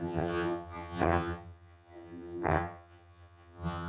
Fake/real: fake